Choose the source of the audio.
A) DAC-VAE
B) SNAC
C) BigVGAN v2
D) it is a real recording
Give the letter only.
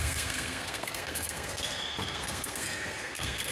B